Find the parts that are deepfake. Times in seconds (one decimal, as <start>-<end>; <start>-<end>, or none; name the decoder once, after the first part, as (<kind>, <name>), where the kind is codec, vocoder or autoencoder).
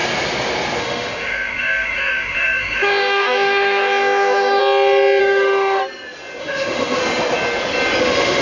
0.8-4.6 (autoencoder, DAC-VAE); 5.2-5.8; 6.4-7.0; 8.0-8.4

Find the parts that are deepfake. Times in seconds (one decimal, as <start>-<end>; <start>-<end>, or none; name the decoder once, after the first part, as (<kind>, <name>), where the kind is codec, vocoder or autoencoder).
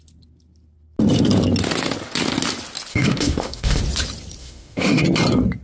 2.9-3.8 (autoencoder, DAC-VAE); 4.4-5.0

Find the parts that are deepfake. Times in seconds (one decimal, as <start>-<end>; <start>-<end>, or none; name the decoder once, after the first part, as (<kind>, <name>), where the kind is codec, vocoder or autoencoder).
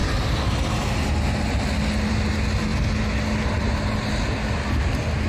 none